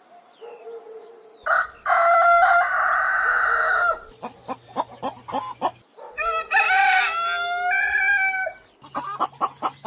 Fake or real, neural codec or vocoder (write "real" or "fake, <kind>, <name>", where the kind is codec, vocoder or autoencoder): real